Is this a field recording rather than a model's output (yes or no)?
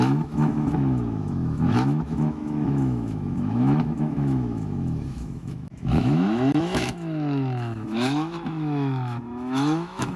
no